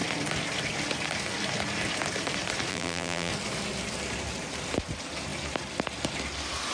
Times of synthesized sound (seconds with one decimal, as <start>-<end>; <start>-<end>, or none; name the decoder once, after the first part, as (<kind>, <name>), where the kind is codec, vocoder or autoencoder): 2.7-3.3 (vocoder, BigVGAN v2)